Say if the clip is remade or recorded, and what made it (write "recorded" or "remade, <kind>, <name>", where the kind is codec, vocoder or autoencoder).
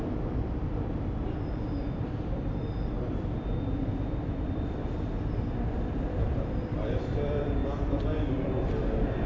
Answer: remade, vocoder, BigVGAN v2